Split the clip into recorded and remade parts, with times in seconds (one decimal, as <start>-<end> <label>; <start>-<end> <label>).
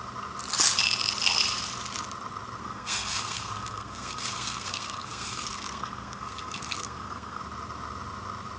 0.0-2.6 recorded; 2.6-7.4 remade; 7.4-8.6 recorded